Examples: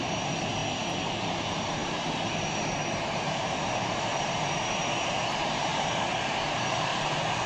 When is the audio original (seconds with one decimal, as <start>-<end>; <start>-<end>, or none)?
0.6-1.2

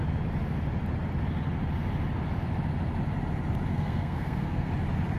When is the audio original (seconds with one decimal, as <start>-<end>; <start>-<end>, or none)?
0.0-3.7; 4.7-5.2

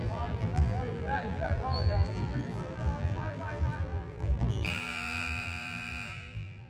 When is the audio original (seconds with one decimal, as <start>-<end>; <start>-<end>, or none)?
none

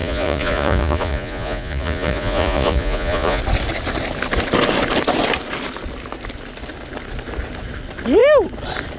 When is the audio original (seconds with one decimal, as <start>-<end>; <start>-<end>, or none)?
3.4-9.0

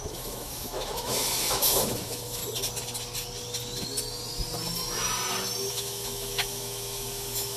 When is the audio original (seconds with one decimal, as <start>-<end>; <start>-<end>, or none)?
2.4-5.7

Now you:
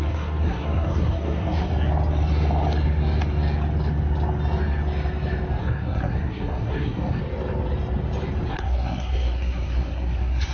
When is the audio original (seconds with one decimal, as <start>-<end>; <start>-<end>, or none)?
1.7-5.6; 7.2-8.5

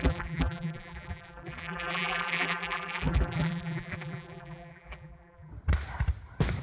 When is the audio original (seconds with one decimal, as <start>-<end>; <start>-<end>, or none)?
5.5-6.6